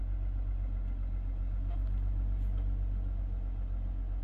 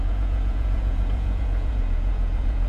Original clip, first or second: first